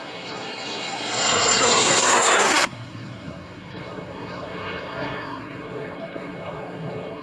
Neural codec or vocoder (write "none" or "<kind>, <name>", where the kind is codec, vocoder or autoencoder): codec, SNAC